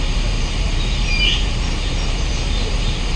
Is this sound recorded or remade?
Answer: recorded